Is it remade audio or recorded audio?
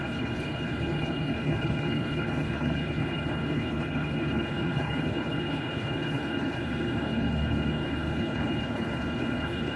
remade